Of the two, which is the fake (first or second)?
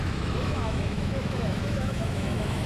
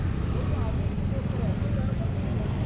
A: first